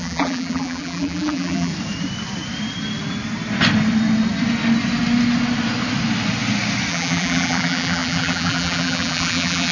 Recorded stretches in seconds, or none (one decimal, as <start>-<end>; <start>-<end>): 1.7-6.9

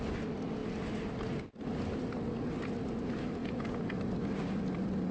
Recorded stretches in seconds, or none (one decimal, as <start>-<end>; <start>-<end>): 0.0-3.4; 4.0-5.1